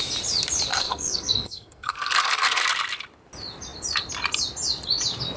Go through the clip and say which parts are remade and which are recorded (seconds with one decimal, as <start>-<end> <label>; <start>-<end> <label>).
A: 0.0-0.7 recorded; 0.7-2.6 remade; 2.6-5.4 recorded